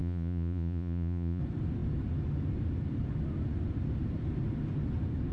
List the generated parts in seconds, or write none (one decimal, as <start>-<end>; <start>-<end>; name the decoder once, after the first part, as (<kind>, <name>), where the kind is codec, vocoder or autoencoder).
0.0-1.4 (vocoder, Vocos)